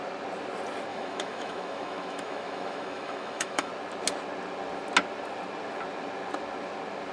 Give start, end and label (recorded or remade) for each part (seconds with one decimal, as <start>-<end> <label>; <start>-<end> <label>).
0.0-0.9 recorded; 0.9-3.7 remade; 3.7-7.1 recorded